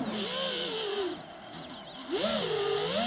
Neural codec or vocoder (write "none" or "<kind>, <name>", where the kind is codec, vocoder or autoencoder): none